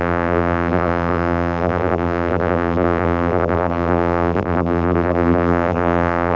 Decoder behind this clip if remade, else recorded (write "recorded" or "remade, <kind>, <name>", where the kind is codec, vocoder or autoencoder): remade, vocoder, BigVGAN v2